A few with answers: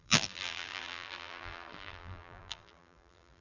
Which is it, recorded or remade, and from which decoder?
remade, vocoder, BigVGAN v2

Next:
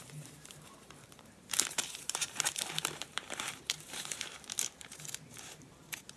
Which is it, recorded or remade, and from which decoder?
remade, vocoder, BigVGAN v2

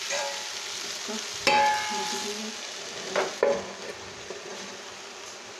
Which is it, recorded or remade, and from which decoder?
recorded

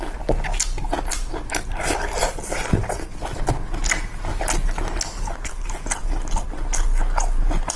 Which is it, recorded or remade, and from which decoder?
recorded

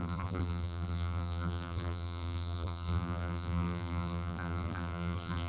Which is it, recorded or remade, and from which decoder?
remade, vocoder, BigVGAN v2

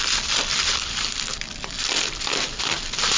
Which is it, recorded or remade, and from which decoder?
remade, vocoder, BigVGAN v2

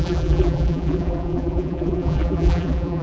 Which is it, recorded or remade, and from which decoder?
remade, vocoder, BigVGAN v2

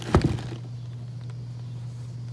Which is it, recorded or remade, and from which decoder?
recorded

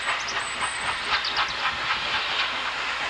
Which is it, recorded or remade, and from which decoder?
recorded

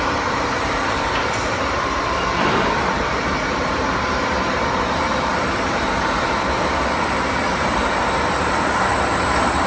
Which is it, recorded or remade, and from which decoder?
remade, vocoder, BigVGAN v2